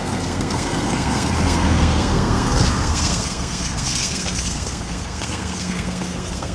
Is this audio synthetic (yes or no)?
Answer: yes